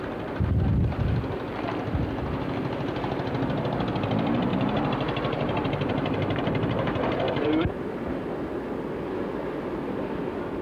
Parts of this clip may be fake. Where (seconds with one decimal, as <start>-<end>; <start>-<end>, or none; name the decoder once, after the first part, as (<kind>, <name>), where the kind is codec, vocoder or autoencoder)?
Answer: 4.5-8.2 (vocoder, BigVGAN v2)